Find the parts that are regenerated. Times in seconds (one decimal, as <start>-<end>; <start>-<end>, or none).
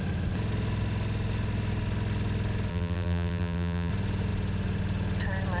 2.7-3.9